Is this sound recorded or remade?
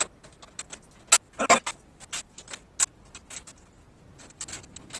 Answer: recorded